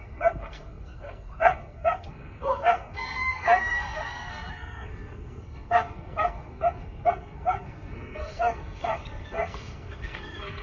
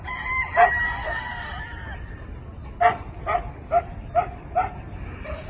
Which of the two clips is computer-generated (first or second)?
first